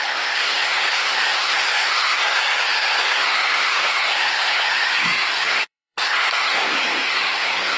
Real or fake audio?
fake